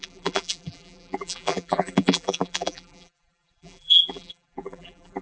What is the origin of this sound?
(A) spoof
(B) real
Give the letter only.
A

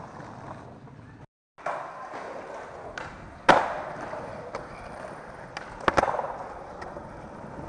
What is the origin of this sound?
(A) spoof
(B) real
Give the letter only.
B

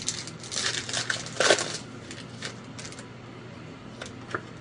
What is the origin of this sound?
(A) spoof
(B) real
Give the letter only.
B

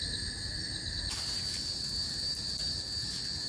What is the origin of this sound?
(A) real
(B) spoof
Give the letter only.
A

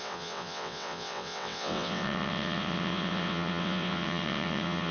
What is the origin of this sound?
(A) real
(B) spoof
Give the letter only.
B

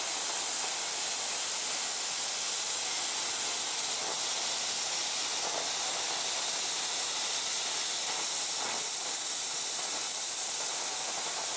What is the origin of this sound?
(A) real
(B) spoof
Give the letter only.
A